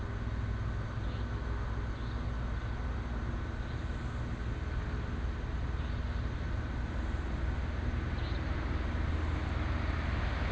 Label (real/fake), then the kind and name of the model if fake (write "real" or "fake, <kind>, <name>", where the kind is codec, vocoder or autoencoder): real